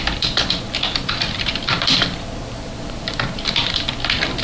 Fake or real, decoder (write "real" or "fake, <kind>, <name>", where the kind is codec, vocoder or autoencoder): fake, vocoder, BigVGAN v2